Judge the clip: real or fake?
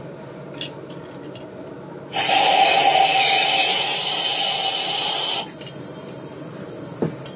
real